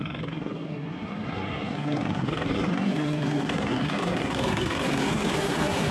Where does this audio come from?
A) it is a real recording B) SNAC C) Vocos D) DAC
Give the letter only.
B